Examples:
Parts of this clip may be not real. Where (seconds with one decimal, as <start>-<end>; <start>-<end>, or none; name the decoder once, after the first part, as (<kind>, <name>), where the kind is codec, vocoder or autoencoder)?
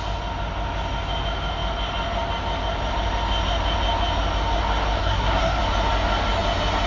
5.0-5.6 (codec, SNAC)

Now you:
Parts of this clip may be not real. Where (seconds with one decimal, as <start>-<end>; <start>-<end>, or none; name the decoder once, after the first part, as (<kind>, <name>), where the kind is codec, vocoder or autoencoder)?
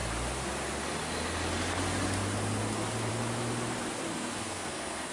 4.1-5.1 (codec, SNAC)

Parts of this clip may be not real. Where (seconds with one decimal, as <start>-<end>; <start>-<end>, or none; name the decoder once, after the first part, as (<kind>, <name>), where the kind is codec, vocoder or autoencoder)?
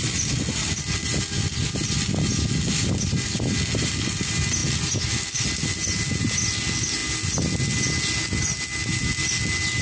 none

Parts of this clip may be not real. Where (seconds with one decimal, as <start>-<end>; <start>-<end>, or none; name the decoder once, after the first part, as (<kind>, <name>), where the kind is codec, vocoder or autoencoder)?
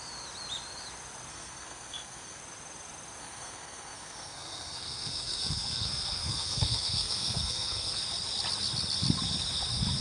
1.3-2.4 (codec, SNAC); 3.2-8.0